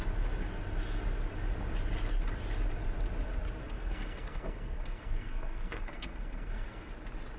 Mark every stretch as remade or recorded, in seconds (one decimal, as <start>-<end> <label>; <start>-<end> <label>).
0.0-3.6 recorded; 3.6-6.9 remade; 6.9-7.4 recorded